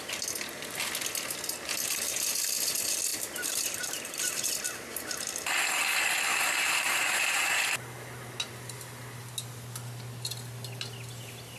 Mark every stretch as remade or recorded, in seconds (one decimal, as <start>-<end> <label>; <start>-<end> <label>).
0.0-3.1 recorded; 3.1-4.5 remade; 4.5-6.3 recorded; 6.3-7.6 remade; 7.6-11.6 recorded